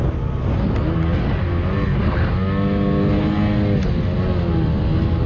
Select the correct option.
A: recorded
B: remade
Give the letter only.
A